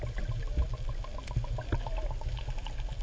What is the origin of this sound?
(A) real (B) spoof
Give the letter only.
A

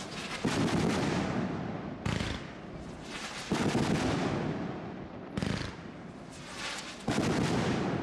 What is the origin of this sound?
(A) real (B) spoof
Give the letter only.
A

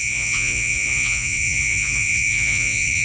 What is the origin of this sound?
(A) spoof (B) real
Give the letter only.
A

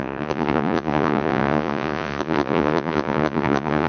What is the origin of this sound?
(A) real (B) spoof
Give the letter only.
B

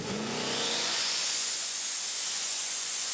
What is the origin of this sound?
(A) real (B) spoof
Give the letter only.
B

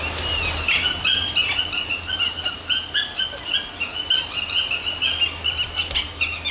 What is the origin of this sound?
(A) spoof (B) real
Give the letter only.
B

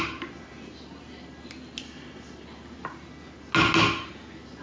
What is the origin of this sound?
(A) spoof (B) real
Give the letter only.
B